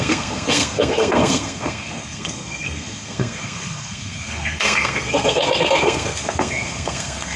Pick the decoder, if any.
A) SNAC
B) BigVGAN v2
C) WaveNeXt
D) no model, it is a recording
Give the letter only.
A